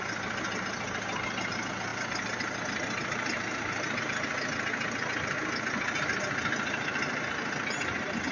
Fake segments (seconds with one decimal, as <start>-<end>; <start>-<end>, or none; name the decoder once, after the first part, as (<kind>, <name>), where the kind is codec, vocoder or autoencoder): none